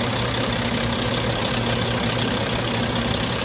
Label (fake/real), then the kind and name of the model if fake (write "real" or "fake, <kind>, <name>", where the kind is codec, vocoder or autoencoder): real